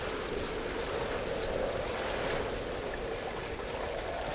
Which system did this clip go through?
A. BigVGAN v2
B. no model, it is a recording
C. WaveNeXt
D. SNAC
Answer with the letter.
B